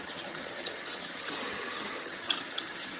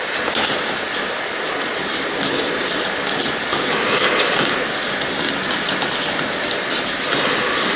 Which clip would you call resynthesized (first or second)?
first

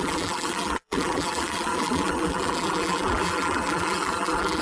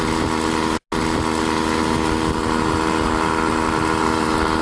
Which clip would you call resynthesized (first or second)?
first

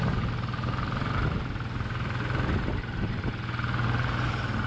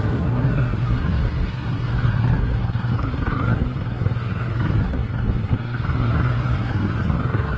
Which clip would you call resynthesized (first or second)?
second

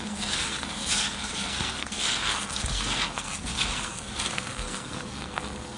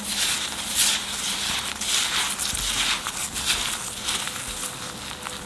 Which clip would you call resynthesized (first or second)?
first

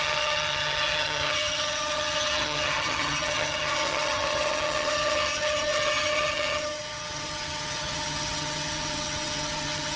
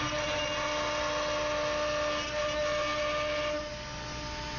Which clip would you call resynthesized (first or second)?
first